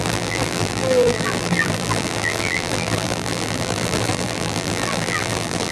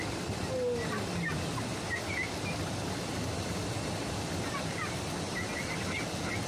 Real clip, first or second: second